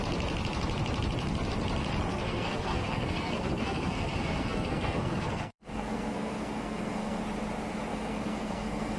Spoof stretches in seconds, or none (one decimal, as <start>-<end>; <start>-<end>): 2.1-7.2; 7.9-9.0